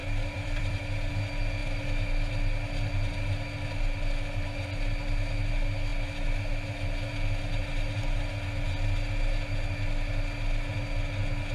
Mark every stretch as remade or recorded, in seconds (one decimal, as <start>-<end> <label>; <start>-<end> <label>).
0.0-1.1 remade; 1.1-11.5 recorded